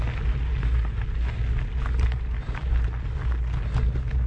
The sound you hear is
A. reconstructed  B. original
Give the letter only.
B